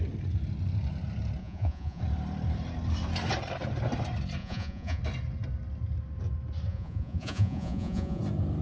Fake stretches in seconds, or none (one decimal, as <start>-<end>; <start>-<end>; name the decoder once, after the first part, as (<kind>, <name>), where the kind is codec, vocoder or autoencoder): 1.4-2.0 (vocoder, Vocos); 4.4-5.0; 6.7-8.2

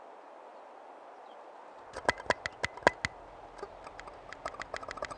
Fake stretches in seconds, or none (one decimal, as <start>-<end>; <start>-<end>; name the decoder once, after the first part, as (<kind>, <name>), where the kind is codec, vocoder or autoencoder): none

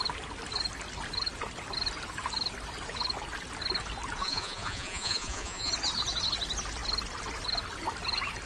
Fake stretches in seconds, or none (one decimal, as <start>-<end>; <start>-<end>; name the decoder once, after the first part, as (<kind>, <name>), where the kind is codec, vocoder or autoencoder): 4.2-5.7 (vocoder, Vocos)

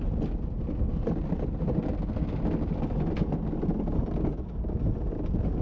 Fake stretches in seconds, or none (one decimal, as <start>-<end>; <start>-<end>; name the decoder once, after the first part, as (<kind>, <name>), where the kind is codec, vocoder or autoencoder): none

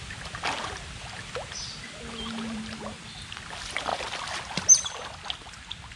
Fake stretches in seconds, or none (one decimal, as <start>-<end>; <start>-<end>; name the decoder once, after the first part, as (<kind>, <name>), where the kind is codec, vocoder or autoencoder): none